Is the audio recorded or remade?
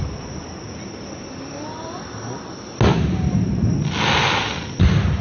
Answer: recorded